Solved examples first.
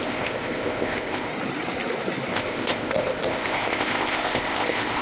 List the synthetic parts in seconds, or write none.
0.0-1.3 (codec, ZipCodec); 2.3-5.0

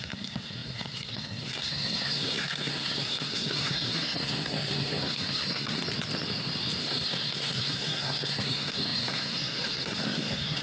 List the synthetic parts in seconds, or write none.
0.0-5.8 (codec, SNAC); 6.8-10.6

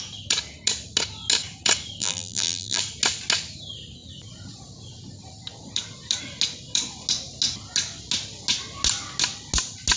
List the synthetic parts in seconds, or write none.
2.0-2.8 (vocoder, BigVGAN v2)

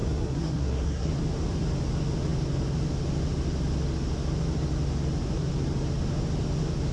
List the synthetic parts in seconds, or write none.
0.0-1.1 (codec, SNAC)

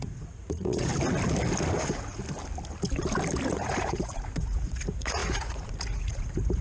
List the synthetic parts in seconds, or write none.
0.0-0.9 (vocoder, Vocos); 1.7-2.2; 3.5-6.6

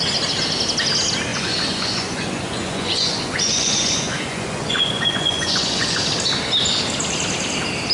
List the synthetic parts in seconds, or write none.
1.3-6.0 (vocoder, Vocos)

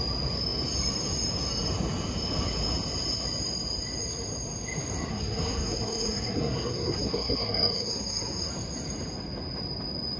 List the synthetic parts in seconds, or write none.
5.1-8.5 (codec, SNAC)